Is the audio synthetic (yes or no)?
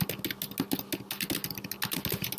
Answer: no